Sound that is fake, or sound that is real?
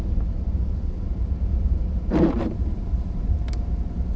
fake